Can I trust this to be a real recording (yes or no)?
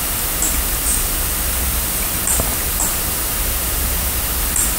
yes